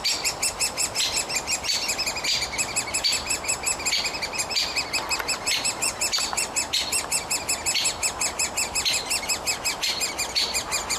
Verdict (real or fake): real